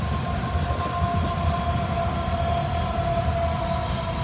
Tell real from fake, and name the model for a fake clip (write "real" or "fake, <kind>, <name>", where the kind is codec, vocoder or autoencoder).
real